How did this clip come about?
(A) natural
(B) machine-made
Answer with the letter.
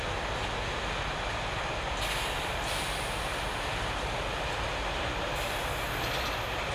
A